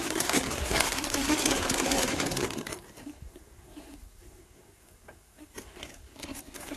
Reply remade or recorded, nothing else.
remade